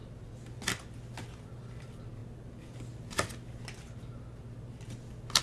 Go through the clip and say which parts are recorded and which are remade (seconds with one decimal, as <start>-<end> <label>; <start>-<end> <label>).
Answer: 0.0-5.4 recorded